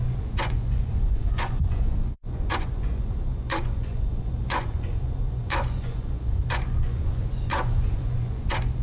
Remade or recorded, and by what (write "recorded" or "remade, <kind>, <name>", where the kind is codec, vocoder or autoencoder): remade, vocoder, Vocos